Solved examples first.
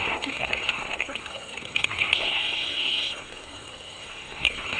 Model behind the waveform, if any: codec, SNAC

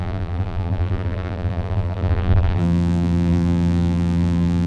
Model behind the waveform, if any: vocoder, BigVGAN v2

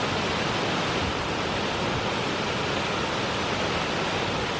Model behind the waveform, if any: none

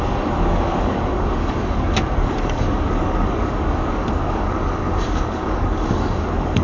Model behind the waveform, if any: codec, DAC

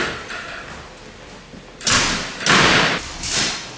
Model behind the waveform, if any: none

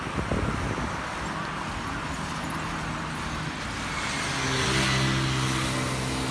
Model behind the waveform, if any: none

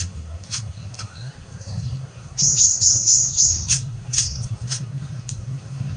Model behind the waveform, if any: codec, SNAC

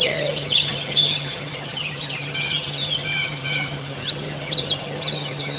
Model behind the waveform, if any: vocoder, HiFi-GAN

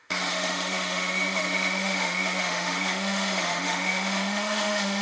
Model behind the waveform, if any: autoencoder, DAC-VAE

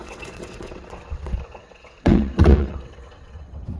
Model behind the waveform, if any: vocoder, WaveNeXt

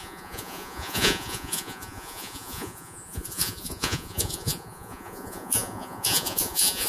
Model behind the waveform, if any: vocoder, Vocos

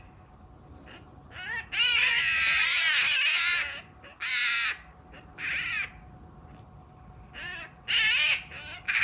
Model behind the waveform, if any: none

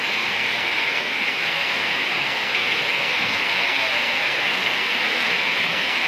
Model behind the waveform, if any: codec, SNAC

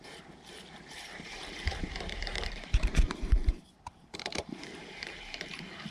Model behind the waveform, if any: vocoder, BigVGAN v2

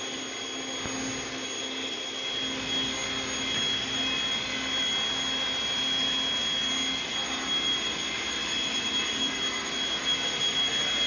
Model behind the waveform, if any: none